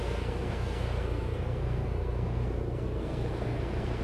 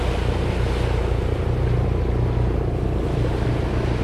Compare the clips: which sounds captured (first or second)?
second